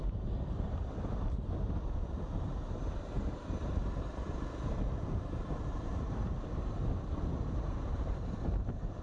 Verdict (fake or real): fake